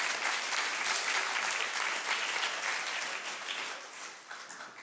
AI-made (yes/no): no